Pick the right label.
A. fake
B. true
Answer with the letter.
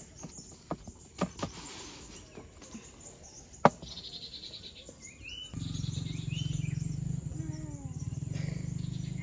B